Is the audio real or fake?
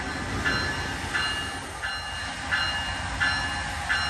real